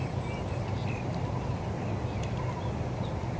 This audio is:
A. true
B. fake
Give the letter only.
A